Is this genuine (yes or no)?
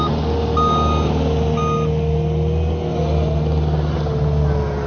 yes